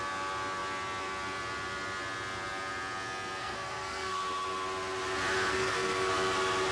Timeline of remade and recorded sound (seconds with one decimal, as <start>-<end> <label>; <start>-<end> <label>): 0.0-3.4 recorded; 3.4-4.2 remade; 4.2-5.5 recorded; 5.5-6.1 remade; 6.1-6.7 recorded